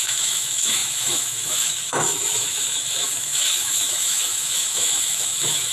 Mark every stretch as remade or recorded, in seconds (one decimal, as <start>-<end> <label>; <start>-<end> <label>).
0.0-5.7 remade